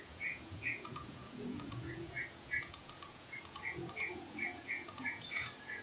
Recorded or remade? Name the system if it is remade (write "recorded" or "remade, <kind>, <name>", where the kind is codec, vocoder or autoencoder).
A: remade, vocoder, Vocos